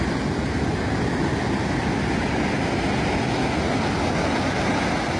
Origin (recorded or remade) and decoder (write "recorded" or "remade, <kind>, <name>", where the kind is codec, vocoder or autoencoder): recorded